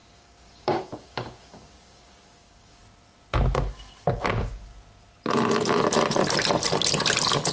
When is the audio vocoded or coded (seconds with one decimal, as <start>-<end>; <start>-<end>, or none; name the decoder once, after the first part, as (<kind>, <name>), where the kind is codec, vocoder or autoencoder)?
0.0-2.8 (codec, DAC); 4.3-4.7